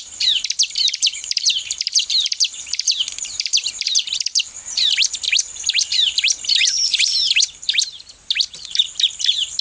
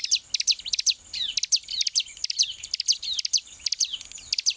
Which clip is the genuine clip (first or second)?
second